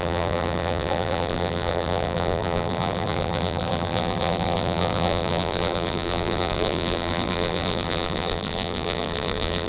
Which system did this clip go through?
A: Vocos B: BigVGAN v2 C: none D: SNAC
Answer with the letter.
B